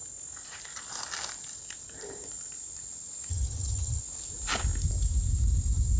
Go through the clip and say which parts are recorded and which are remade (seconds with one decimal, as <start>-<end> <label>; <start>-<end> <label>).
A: 0.0-3.3 recorded; 3.3-4.0 remade; 4.0-6.0 recorded